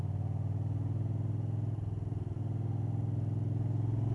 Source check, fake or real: real